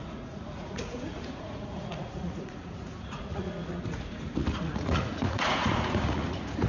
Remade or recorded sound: remade